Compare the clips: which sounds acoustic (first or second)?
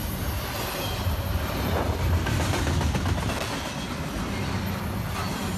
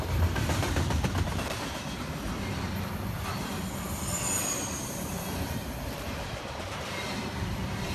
first